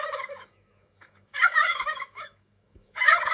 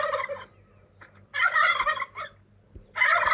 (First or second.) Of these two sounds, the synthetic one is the first